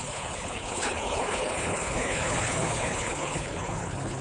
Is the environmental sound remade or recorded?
remade